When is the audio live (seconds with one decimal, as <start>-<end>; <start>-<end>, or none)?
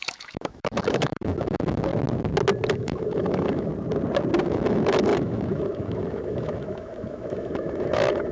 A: 1.9-2.7; 3.7-4.4